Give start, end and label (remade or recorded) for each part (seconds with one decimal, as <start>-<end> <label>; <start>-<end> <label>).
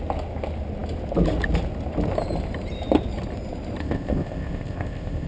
0.0-3.8 recorded; 3.8-5.3 remade